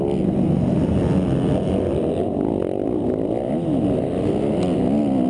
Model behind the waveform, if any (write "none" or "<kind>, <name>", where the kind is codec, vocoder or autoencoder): none